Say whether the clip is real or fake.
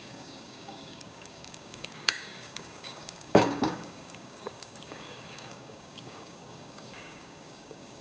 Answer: fake